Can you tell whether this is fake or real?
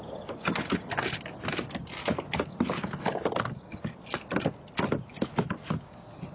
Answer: real